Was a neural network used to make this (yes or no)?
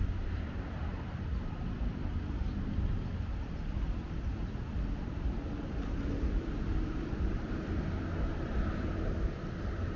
yes